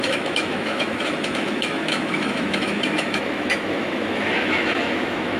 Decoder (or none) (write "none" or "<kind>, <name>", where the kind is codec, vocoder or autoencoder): autoencoder, DAC-VAE